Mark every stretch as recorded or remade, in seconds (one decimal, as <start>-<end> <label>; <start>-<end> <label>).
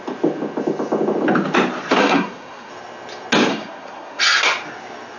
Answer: 0.0-2.0 recorded; 2.0-2.7 remade; 2.7-3.5 recorded; 3.5-4.2 remade; 4.2-5.2 recorded